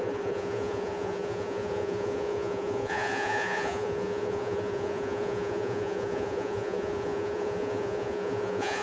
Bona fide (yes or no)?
no